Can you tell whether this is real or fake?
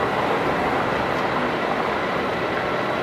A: real